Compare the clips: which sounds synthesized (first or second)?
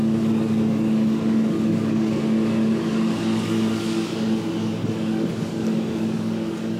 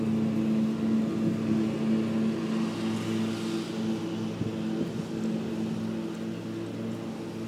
first